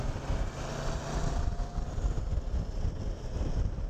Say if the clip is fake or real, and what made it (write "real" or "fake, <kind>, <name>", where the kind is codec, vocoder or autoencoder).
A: real